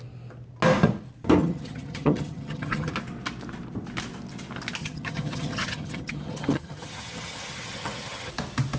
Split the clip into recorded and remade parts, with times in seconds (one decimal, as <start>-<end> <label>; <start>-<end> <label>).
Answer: 0.0-1.4 recorded; 1.4-2.9 remade; 2.9-4.8 recorded; 4.8-8.3 remade; 8.3-8.8 recorded